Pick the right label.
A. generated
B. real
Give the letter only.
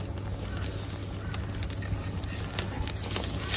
B